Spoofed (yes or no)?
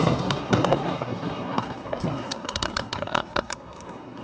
yes